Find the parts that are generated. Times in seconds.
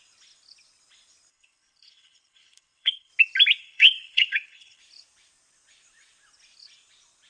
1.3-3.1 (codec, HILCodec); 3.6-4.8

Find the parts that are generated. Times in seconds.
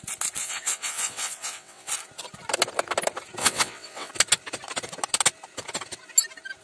0.4-1.9 (vocoder, WaveNeXt); 3.4-4.1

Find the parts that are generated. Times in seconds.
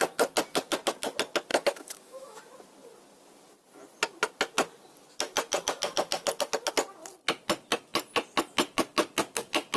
1.5-2.4 (autoencoder, DAC-VAE)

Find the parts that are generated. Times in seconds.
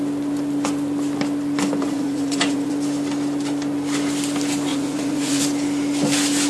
1.8-2.7 (vocoder, Vocos); 4.7-5.4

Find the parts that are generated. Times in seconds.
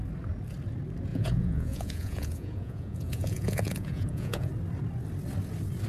1.1-4.5 (vocoder, Vocos)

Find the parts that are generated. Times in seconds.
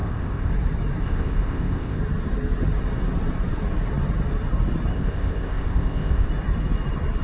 0.0-0.5 (codec, ZipCodec); 1.0-2.0; 4.9-6.3